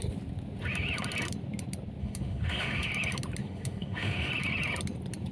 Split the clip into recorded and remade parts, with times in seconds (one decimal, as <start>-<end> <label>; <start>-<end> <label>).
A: 0.0-2.0 recorded; 2.0-2.9 remade; 2.9-3.4 recorded; 3.4-4.3 remade; 4.3-5.3 recorded